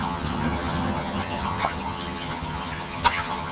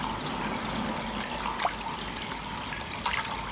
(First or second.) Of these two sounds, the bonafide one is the second